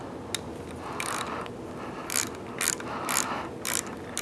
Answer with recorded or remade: recorded